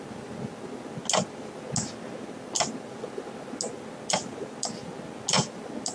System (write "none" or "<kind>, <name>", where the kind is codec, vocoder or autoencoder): none